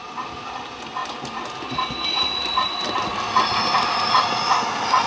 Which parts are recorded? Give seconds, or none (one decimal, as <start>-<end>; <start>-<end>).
0.0-5.1